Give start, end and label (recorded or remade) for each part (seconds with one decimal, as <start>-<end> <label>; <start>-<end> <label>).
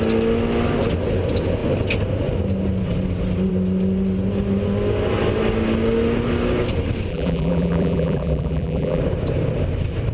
0.0-7.1 recorded; 7.1-9.0 remade; 9.0-10.1 recorded